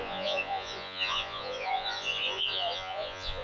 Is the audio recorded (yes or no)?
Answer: no